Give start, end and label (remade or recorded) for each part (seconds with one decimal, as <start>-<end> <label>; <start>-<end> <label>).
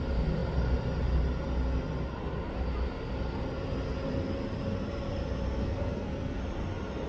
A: 0.0-5.6 recorded; 5.6-6.4 remade; 6.4-7.1 recorded